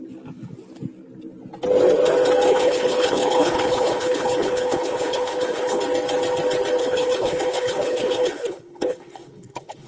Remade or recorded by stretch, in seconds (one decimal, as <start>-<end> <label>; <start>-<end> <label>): 0.0-2.5 recorded; 2.5-5.8 remade; 5.8-6.8 recorded; 6.8-9.9 remade